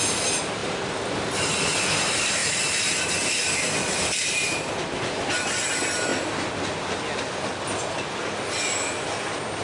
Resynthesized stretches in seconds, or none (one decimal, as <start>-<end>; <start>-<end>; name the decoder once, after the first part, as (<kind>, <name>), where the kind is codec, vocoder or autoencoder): 2.4-4.8 (vocoder, BigVGAN v2)